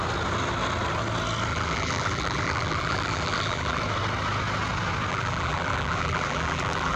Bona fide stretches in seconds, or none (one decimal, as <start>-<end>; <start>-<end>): 0.0-1.5; 3.8-5.1